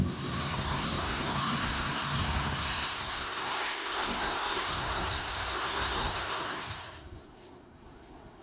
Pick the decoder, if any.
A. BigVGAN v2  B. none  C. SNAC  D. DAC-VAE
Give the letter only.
C